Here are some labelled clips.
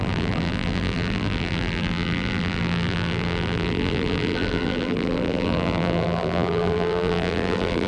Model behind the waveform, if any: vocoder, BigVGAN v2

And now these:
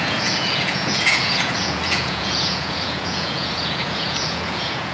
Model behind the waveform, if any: vocoder, Vocos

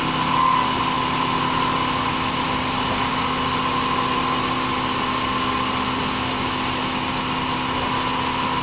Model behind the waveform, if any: none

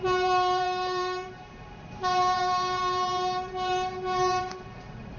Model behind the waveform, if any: vocoder, BigVGAN v2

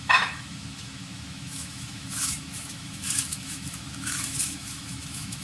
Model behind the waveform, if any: autoencoder, DAC-VAE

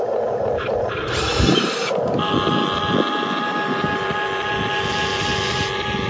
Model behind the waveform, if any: none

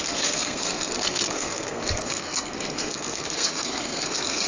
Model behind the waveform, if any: codec, SNAC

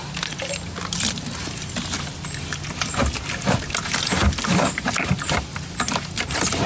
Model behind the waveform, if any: none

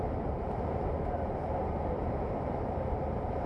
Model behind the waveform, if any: none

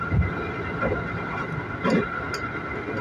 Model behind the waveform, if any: none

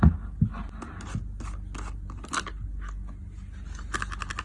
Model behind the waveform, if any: none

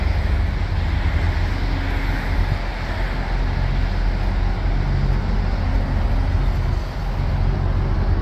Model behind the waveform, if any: none